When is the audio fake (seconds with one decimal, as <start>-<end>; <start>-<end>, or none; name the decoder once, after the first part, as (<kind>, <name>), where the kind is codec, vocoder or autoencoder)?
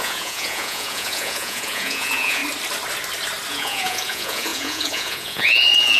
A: 0.0-2.4 (vocoder, Vocos); 3.5-6.0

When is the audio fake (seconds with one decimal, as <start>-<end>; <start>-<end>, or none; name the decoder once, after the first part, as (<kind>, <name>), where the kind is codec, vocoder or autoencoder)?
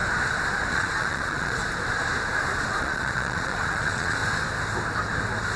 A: 0.7-1.6 (vocoder, Vocos); 2.8-4.2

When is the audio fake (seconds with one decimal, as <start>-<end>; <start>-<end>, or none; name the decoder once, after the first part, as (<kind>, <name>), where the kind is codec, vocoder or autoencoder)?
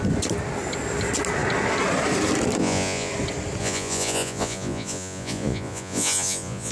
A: 2.6-3.1 (vocoder, Vocos); 3.6-6.7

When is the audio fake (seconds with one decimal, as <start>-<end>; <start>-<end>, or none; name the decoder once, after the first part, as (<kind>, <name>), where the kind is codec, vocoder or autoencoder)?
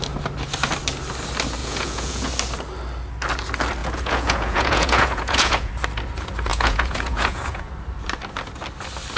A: 1.6-2.3 (vocoder, Vocos); 3.8-5.7; 6.5-7.7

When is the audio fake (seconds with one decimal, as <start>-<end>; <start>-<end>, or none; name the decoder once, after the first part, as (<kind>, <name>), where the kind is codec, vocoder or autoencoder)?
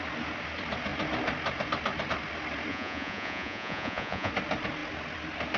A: 2.7-4.3 (vocoder, Vocos)